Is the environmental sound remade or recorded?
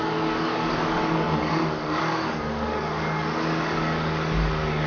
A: remade